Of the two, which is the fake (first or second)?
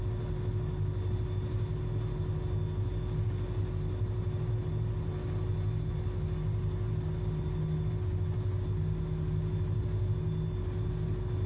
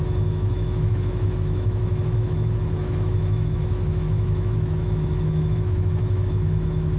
second